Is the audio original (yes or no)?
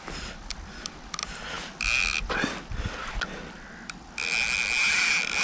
yes